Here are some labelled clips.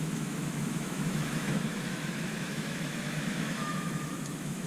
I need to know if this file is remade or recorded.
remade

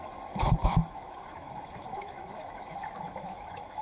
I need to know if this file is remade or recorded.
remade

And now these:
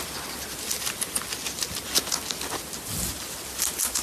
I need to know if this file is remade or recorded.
recorded